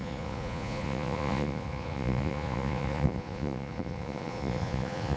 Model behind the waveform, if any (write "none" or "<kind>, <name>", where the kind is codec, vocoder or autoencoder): vocoder, Vocos